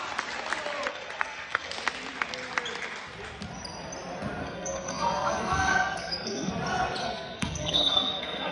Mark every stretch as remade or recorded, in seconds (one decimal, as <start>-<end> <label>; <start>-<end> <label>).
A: 0.0-0.9 recorded; 0.9-1.7 remade; 1.7-4.4 recorded; 4.4-6.5 remade; 6.5-7.0 recorded; 7.0-8.5 remade